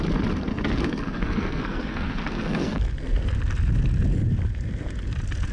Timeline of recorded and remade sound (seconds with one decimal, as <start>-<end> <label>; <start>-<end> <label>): 0.0-0.5 recorded; 0.5-2.8 remade; 2.8-5.5 recorded